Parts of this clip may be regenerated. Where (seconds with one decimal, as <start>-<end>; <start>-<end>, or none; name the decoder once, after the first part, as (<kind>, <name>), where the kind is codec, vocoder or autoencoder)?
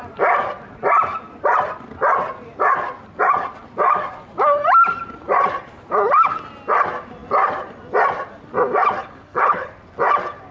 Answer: 9.0-9.7 (codec, HILCodec)